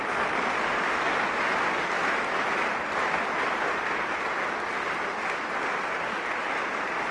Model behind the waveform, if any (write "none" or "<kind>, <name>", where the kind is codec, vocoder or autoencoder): none